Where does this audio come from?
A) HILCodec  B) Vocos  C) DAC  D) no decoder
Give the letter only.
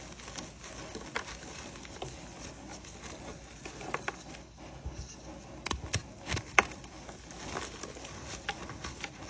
D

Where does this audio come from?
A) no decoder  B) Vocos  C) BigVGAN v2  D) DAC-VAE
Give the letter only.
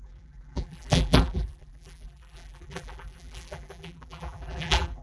C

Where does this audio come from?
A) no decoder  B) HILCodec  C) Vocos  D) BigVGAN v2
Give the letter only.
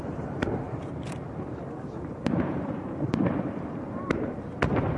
D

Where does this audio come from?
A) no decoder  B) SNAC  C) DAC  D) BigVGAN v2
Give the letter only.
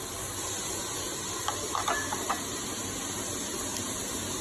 A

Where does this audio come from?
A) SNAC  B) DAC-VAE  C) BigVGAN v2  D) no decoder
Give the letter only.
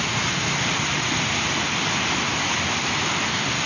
D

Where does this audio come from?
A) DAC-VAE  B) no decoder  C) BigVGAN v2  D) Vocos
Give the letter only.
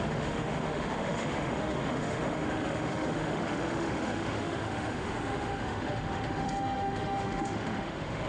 A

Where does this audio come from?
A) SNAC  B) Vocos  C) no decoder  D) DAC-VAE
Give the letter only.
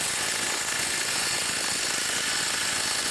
B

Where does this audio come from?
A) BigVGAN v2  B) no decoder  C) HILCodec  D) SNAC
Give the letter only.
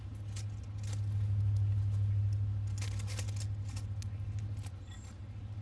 B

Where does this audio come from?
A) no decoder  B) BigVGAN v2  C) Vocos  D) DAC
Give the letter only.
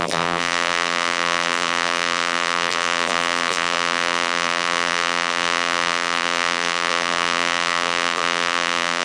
B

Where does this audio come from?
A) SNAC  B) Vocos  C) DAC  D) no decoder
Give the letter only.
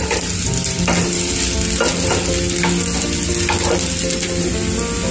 D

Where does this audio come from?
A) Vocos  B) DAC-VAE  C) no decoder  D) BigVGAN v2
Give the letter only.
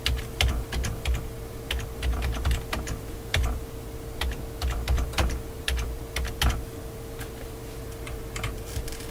D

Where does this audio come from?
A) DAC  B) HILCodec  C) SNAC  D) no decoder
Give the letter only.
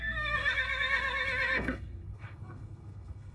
C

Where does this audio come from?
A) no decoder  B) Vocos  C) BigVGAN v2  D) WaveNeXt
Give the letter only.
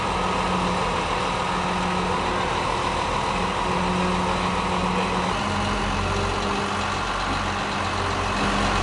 A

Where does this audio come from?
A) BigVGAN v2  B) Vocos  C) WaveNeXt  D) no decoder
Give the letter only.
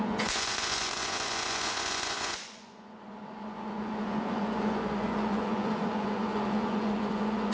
B